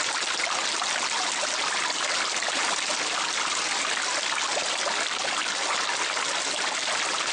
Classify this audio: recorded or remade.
recorded